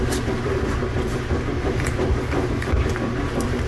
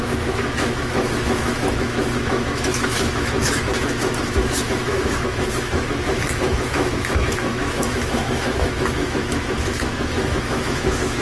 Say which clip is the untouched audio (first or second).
first